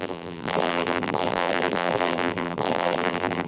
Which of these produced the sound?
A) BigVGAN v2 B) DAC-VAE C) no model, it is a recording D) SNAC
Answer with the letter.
A